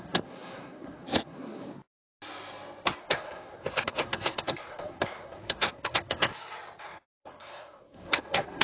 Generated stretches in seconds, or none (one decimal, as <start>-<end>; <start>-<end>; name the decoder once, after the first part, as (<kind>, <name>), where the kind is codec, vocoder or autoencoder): 0.0-1.6 (codec, SNAC); 3.0-6.3; 6.8-8.6